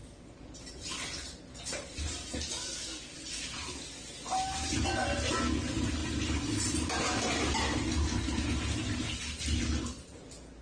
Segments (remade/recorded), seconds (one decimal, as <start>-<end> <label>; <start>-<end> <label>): 0.0-2.5 recorded; 2.5-3.1 remade; 3.1-10.6 recorded